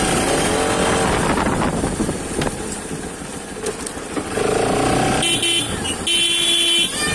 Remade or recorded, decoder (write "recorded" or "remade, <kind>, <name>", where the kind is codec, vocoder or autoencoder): recorded